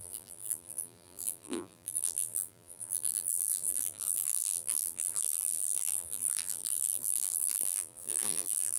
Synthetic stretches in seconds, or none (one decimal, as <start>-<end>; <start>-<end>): 0.0-8.8